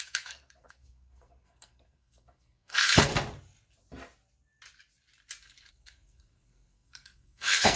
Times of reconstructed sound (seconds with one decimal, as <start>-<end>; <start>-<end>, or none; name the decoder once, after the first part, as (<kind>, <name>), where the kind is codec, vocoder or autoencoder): 0.0-3.1 (codec, SNAC); 5.7-7.8